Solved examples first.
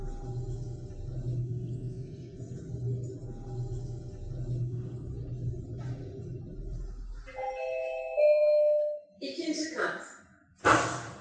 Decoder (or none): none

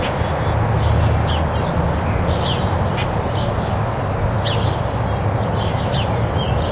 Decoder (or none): none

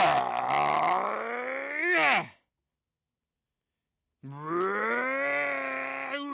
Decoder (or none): none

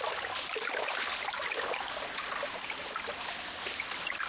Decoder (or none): none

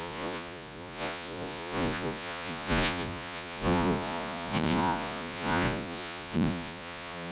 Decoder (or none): vocoder, Vocos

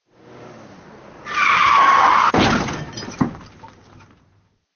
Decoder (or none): none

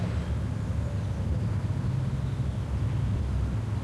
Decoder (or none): none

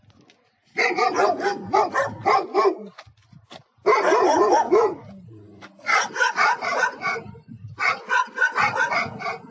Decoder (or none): none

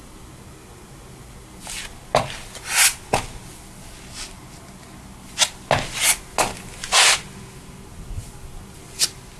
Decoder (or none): none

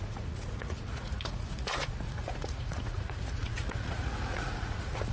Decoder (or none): vocoder, Vocos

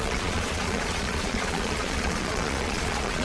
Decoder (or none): vocoder, Vocos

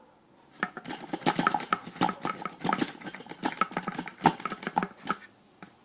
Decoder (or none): none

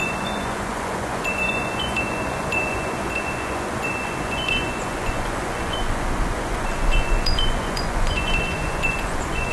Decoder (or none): vocoder, Vocos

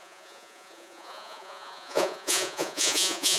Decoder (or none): vocoder, Vocos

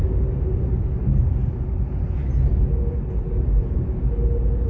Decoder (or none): none